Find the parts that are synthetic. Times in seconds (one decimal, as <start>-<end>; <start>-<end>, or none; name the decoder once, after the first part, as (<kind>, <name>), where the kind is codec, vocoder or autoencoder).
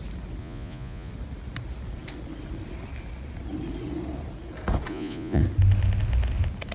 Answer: 0.4-1.1 (vocoder, Vocos); 4.9-5.4